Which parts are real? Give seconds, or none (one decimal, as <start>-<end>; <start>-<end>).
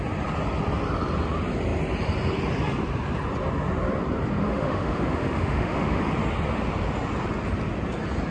0.0-4.4; 6.0-8.3